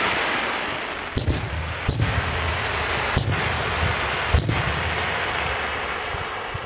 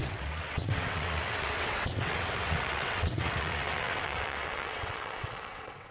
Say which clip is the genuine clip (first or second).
first